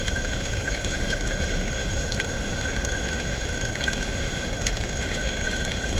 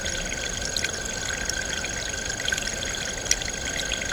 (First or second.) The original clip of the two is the second